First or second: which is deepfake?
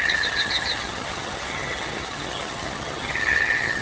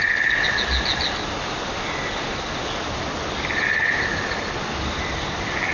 first